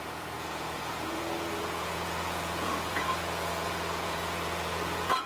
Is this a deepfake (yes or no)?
yes